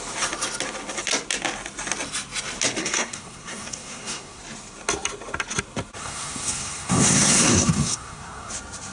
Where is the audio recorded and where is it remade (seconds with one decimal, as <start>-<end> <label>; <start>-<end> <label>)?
0.0-2.8 recorded; 2.8-4.4 remade; 4.4-6.0 recorded; 6.0-8.5 remade; 8.5-8.9 recorded